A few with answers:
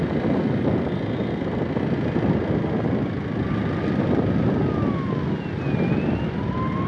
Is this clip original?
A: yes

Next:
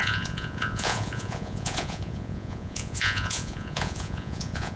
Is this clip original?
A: no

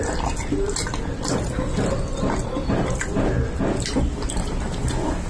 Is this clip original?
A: yes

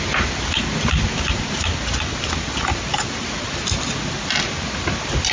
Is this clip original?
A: yes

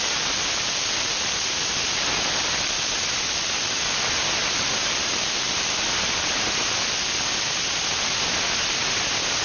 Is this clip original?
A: yes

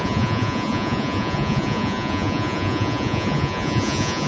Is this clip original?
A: no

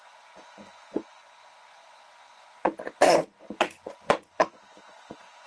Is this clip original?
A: no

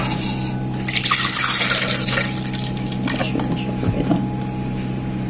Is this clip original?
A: yes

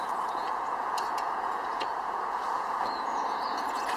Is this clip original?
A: no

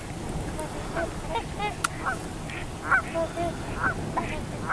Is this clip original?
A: yes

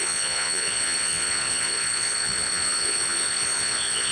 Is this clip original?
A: no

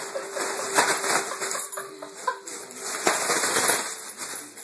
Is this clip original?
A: yes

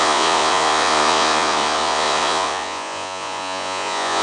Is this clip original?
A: no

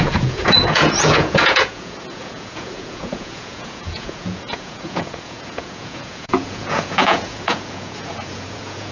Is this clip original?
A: no